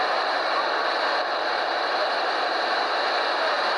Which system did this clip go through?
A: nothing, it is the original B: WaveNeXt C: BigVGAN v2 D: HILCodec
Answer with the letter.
C